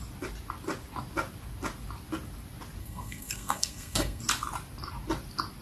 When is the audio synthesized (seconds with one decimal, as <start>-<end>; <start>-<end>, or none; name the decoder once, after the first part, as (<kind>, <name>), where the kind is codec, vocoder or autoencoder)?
2.8-4.2 (codec, SNAC)